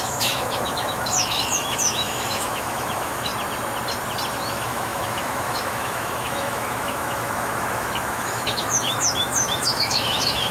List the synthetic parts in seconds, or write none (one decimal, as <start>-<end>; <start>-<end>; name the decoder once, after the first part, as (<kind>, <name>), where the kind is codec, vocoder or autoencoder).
0.0-3.3 (autoencoder, DAC-VAE); 4.3-10.5